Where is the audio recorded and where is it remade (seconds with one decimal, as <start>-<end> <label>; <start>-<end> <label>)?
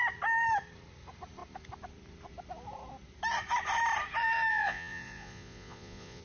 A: 0.0-4.5 recorded; 4.5-6.2 remade